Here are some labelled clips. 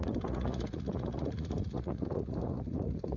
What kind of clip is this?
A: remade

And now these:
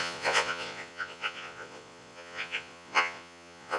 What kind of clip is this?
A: remade